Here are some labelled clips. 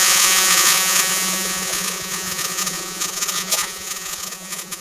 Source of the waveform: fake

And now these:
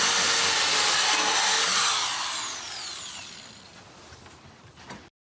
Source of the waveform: real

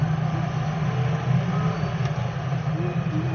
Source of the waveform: real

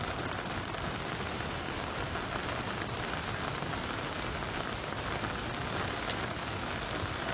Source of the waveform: real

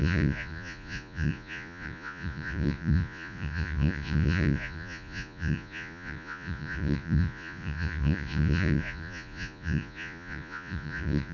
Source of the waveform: fake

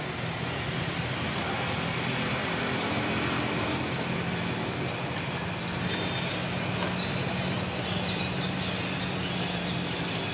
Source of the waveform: real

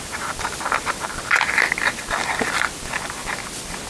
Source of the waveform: real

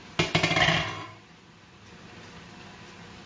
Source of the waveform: real